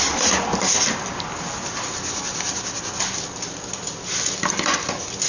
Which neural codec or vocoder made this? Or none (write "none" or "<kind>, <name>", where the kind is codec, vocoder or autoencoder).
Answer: none